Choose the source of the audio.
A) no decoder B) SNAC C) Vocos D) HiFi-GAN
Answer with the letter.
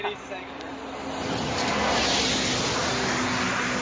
A